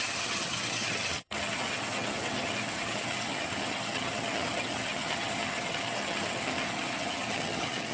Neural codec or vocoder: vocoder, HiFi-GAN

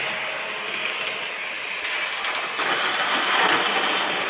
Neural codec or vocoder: none